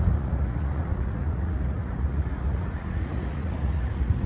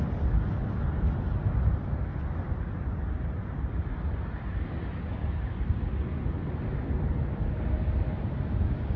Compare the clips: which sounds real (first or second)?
second